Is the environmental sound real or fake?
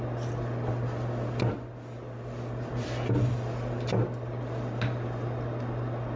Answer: real